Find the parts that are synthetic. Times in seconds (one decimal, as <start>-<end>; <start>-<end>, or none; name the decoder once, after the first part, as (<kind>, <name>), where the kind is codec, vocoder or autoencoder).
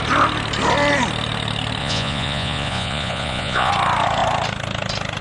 1.8-3.7 (vocoder, Vocos)